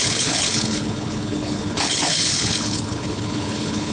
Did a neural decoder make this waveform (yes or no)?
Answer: yes